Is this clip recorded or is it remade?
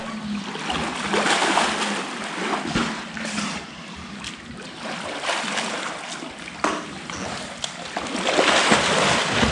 recorded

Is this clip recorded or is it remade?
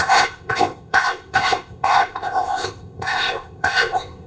remade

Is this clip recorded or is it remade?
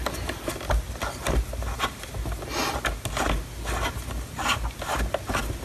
recorded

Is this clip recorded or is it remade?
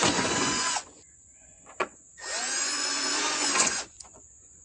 remade